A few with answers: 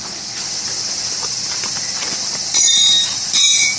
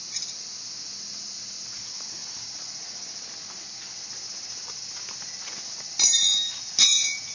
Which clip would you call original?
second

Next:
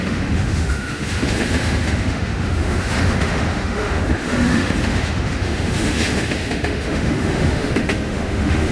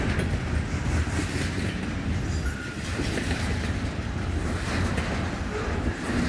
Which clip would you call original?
second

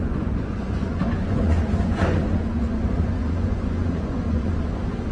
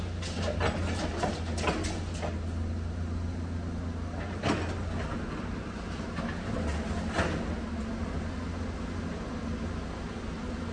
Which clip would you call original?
second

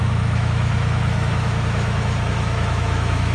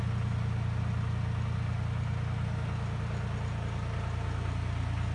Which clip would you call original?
second